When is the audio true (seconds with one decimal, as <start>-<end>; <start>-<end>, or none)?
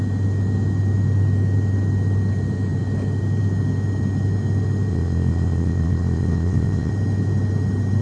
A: 0.0-4.9; 6.9-8.0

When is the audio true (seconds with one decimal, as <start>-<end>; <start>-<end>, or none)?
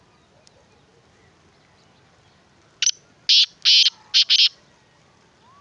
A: 0.0-5.6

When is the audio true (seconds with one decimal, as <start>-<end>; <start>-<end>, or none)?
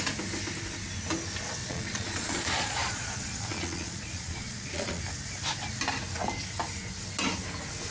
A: 0.0-1.6; 5.0-7.9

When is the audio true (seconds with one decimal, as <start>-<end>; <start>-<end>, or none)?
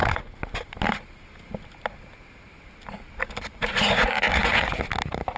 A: 0.0-3.6; 4.8-5.4